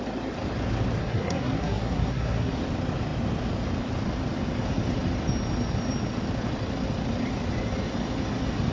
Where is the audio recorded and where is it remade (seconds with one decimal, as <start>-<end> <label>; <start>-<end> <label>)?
0.0-1.0 recorded; 1.0-2.6 remade; 2.6-8.7 recorded